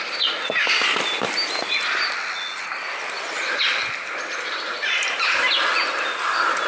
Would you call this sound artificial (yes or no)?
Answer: no